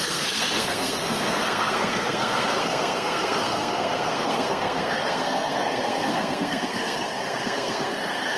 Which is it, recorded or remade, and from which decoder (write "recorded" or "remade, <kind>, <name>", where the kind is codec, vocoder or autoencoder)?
remade, codec, SNAC